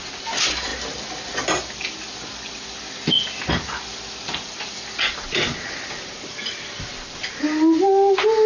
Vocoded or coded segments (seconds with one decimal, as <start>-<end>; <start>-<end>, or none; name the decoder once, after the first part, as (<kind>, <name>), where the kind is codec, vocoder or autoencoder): none